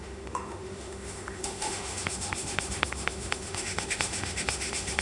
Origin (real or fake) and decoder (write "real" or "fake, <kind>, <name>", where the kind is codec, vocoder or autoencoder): fake, autoencoder, DAC-VAE